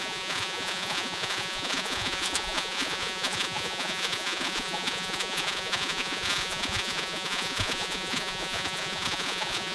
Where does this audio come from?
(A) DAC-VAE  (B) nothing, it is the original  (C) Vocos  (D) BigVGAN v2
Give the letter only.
C